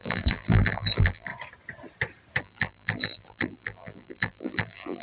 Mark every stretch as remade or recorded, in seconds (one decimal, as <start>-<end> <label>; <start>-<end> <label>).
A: 0.0-1.3 remade; 1.3-2.4 recorded; 2.4-5.0 remade